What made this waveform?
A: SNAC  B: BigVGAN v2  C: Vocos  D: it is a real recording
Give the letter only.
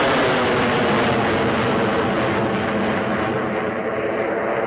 D